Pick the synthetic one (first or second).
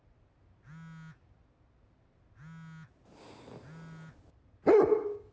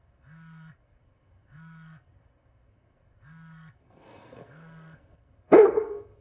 second